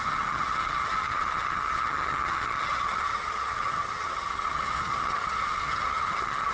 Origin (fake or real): fake